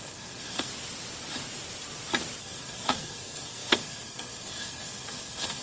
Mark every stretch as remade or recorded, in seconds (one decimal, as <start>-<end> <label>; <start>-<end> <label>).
0.0-0.7 remade; 0.7-2.4 recorded; 2.4-5.6 remade

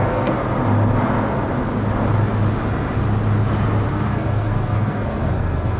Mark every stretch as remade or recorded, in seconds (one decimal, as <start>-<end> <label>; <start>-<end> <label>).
0.0-0.4 remade; 0.4-3.9 recorded; 3.9-5.8 remade

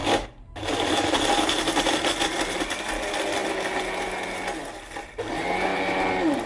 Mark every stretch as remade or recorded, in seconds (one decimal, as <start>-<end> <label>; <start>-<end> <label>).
0.0-5.7 recorded; 5.7-6.5 remade

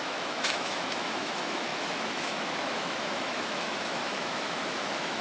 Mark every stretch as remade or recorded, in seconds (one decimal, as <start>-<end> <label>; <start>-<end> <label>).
0.0-5.2 remade

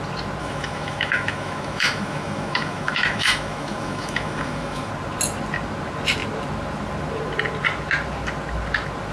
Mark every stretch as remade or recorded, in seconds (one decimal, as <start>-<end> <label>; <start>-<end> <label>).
0.0-0.4 recorded; 0.4-4.9 remade; 4.9-9.1 recorded

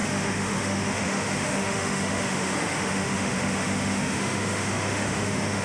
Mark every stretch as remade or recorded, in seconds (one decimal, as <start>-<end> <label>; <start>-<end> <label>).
0.0-5.6 remade